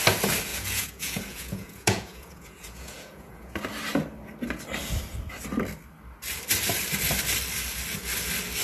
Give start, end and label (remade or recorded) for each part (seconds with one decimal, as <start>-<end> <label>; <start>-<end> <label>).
0.0-0.5 recorded; 0.5-3.5 remade; 3.5-8.6 recorded